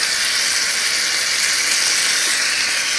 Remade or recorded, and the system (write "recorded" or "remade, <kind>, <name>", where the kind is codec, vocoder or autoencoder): recorded